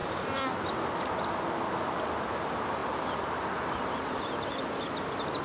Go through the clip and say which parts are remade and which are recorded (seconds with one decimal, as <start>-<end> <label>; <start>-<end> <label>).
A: 0.0-5.4 recorded

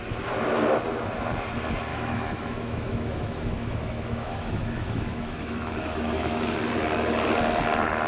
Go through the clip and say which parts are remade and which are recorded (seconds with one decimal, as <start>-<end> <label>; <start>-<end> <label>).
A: 0.0-1.9 recorded; 1.9-6.4 remade; 6.4-8.1 recorded

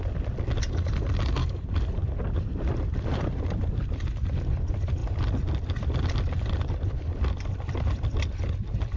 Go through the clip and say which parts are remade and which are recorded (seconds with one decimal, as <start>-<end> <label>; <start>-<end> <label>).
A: 0.0-1.4 recorded; 1.4-3.4 remade; 3.4-9.0 recorded

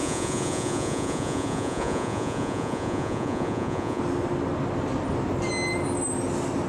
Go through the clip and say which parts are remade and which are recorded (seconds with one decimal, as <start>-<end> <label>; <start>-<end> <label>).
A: 0.0-4.0 remade; 4.0-6.7 recorded